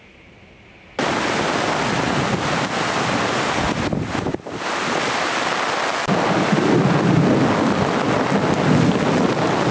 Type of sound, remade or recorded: recorded